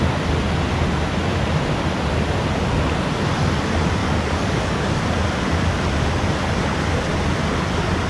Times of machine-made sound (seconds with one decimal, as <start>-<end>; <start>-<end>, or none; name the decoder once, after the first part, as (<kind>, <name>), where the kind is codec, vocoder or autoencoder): 4.0-5.0 (codec, DAC)